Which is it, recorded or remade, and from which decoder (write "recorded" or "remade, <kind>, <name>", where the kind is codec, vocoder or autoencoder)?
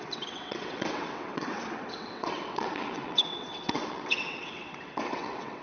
remade, vocoder, WaveNeXt